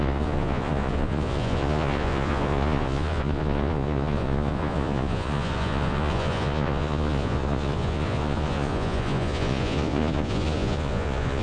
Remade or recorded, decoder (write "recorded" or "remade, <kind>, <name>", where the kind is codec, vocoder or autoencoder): remade, vocoder, Vocos